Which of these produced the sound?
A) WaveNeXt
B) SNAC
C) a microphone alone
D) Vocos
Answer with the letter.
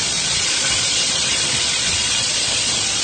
D